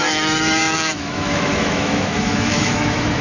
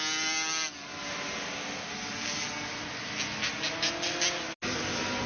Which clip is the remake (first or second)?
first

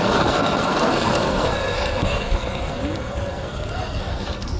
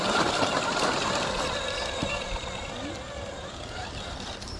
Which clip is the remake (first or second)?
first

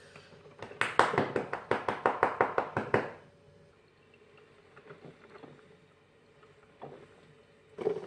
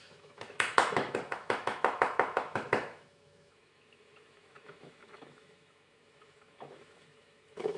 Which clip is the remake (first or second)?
second